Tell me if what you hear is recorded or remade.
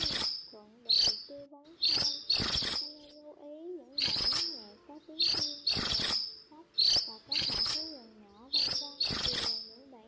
recorded